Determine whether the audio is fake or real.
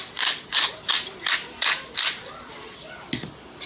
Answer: real